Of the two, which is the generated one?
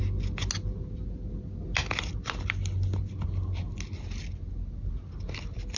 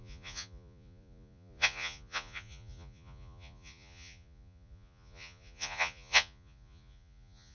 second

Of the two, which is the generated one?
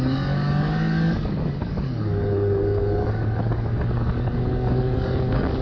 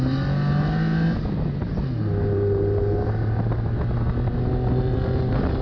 first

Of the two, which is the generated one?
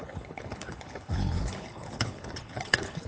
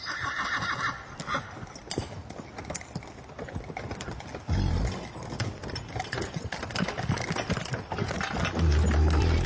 first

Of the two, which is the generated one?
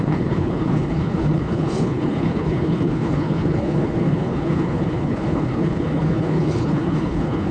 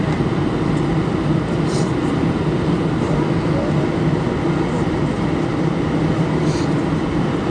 first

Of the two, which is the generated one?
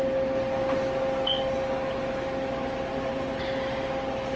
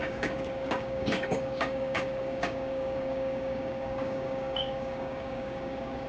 second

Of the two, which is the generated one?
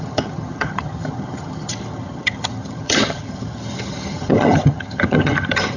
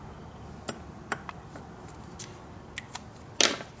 first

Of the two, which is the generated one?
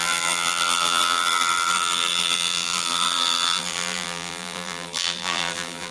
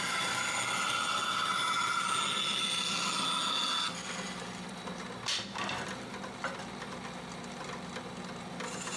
first